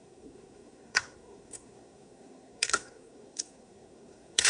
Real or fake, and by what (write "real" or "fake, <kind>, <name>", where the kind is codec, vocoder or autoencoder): fake, codec, SNAC